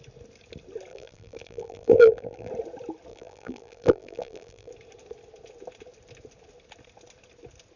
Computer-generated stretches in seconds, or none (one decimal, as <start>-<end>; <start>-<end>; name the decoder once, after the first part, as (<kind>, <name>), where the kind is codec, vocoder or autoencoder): 0.9-2.5 (vocoder, BigVGAN v2); 3.1-4.7